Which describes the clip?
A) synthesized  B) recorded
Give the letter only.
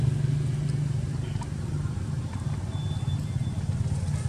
B